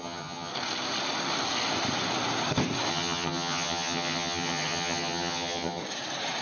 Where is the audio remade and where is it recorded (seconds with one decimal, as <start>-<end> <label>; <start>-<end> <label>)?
0.0-0.5 remade; 0.5-2.9 recorded; 2.9-5.8 remade; 5.8-6.4 recorded